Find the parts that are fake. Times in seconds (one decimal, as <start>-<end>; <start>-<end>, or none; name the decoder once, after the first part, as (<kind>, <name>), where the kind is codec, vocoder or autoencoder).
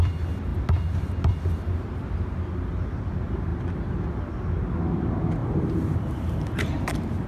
5.4-7.3 (vocoder, BigVGAN v2)